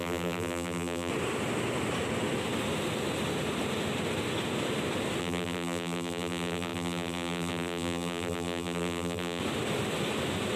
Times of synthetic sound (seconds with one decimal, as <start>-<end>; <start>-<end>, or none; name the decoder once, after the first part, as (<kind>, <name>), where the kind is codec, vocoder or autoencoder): 0.0-1.1 (vocoder, BigVGAN v2); 5.2-9.4